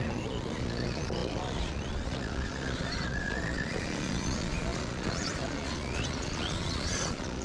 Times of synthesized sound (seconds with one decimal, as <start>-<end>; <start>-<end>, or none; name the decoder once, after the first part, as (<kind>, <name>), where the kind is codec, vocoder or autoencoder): 0.0-7.4 (vocoder, Vocos)